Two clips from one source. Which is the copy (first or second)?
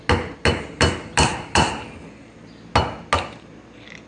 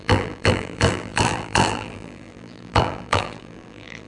second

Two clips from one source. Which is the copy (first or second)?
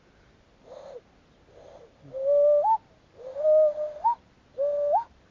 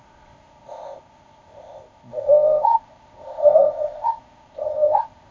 second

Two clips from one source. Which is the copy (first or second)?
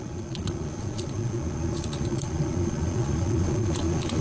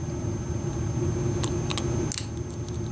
first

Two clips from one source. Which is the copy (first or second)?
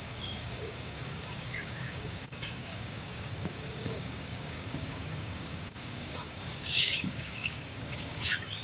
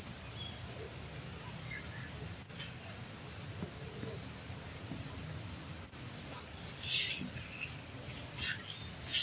first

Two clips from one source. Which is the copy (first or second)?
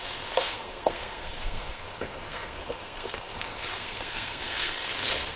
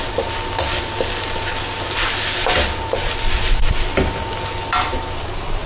first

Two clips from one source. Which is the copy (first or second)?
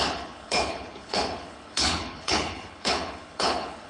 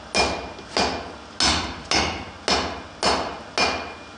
first